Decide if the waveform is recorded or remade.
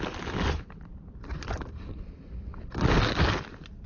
recorded